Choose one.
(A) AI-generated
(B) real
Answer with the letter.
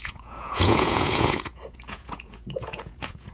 A